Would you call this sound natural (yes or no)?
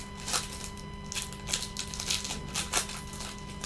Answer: yes